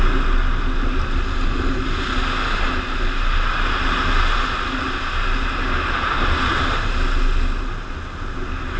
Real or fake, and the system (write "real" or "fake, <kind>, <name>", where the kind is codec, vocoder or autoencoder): real